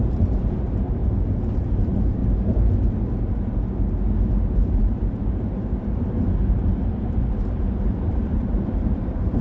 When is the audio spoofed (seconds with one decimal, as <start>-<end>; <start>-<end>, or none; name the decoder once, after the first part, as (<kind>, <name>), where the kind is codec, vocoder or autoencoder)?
0.0-1.0 (vocoder, BigVGAN v2); 1.6-2.2; 4.3-9.4